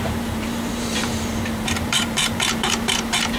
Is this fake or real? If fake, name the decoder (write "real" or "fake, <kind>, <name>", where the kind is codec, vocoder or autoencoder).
fake, vocoder, BigVGAN v2